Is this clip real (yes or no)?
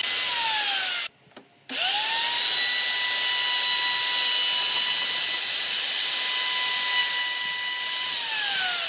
yes